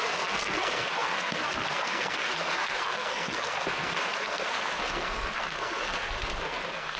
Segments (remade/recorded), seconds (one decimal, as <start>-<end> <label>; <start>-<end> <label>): 0.0-7.0 remade